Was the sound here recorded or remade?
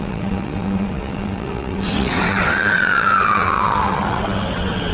remade